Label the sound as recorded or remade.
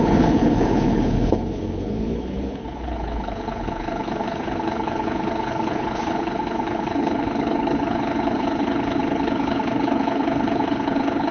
remade